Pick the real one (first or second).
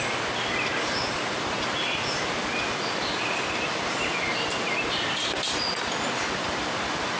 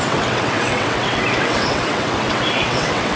first